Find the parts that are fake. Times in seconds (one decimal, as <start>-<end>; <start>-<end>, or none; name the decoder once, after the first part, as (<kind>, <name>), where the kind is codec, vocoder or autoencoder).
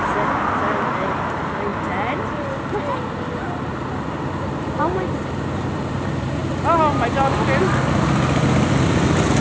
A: none